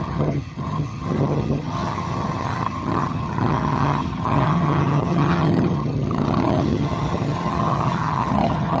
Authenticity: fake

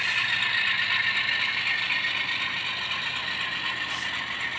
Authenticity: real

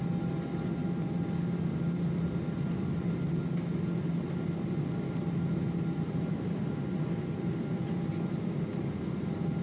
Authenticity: real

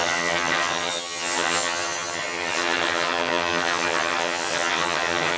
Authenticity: fake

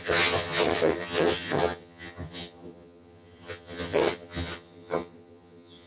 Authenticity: fake